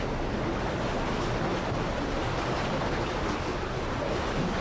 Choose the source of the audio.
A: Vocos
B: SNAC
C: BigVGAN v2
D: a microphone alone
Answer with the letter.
D